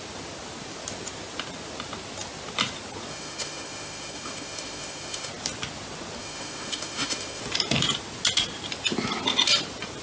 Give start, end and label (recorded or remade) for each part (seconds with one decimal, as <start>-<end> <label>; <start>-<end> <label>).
0.0-3.1 recorded; 3.1-5.3 remade; 5.3-6.2 recorded; 6.2-7.4 remade; 7.4-10.0 recorded